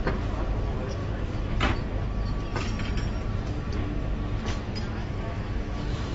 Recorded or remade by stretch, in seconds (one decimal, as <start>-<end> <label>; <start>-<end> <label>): 0.0-1.0 recorded; 1.0-1.6 remade; 1.6-5.0 recorded; 5.0-6.1 remade